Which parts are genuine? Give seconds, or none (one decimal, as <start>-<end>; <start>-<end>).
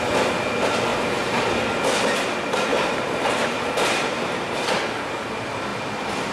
0.0-0.9; 1.5-2.7; 4.8-6.3